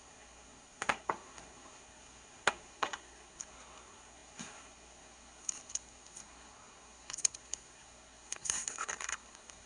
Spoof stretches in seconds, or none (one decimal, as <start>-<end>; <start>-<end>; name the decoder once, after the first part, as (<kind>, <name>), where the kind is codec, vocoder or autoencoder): 0.0-9.7 (codec, SNAC)